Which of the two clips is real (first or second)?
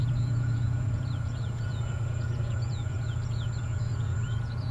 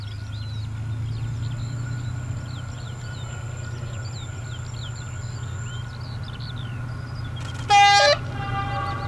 second